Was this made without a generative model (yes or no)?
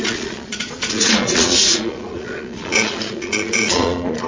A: no